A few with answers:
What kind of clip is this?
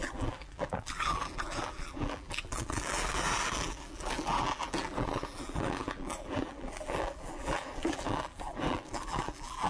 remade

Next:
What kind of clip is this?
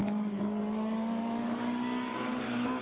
remade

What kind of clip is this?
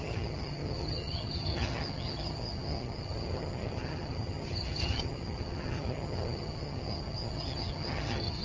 remade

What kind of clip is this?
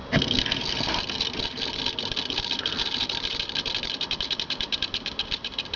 recorded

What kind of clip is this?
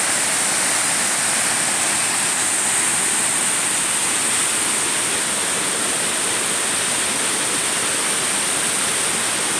recorded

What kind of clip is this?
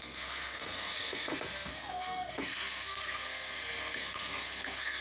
remade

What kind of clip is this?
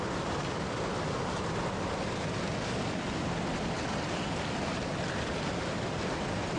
recorded